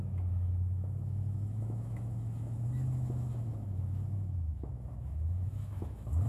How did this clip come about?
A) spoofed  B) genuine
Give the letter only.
A